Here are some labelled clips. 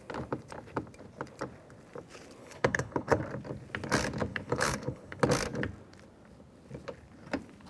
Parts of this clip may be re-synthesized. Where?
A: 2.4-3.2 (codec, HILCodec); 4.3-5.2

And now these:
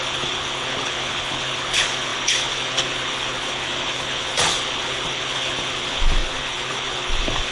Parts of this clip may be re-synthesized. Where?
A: 0.0-7.5 (codec, HILCodec)

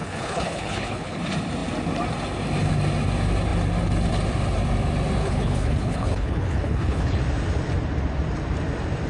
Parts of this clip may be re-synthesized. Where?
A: 0.0-1.2 (codec, HILCodec); 5.2-7.2